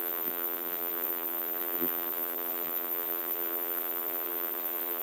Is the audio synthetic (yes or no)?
yes